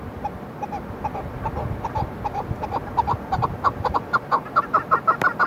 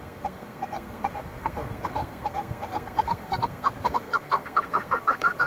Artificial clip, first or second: second